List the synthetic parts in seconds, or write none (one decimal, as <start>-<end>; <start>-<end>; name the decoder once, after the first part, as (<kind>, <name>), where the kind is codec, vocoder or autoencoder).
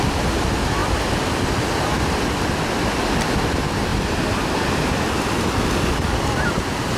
none